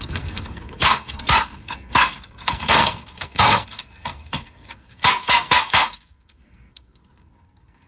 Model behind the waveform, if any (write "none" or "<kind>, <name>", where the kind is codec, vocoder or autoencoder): codec, SNAC